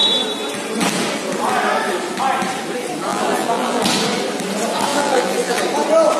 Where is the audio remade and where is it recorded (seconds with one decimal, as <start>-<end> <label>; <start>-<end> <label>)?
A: 0.0-3.1 recorded; 3.1-3.8 remade; 3.8-4.9 recorded; 4.9-5.6 remade; 5.6-6.2 recorded